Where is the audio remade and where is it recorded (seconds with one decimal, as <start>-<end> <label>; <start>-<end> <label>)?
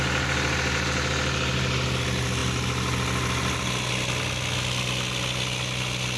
0.0-6.2 recorded